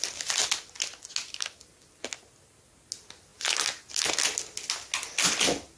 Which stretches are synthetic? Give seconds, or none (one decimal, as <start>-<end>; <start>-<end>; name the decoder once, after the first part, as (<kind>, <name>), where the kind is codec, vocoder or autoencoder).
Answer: none